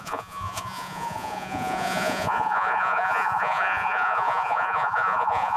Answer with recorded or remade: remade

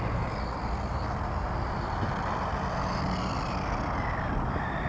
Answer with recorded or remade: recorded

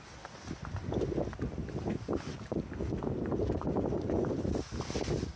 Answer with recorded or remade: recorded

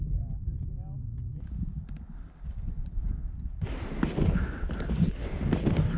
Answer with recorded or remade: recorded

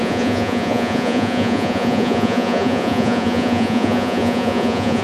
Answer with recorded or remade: remade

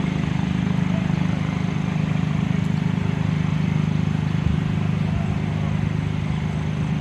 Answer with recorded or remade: recorded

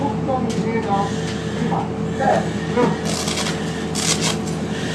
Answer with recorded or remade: recorded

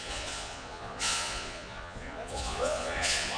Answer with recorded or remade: remade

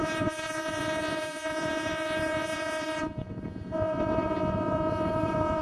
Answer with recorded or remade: remade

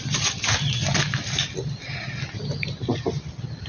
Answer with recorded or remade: recorded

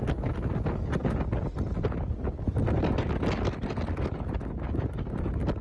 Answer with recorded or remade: recorded